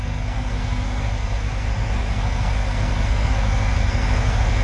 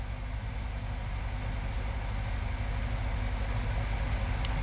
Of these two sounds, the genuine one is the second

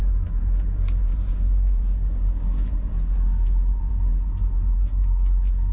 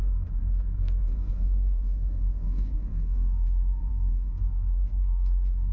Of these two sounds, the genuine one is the first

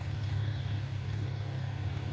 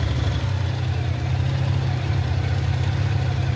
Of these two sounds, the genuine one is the second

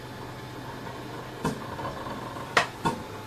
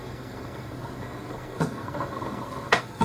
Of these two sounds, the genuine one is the first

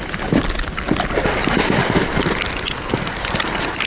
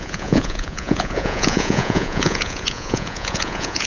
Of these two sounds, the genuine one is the first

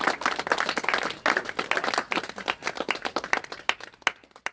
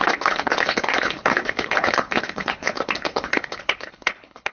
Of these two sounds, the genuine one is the first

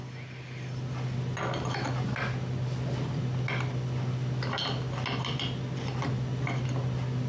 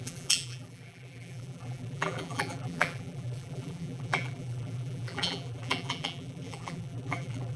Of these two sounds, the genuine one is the first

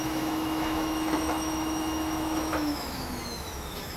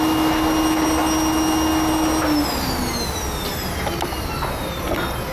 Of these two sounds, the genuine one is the second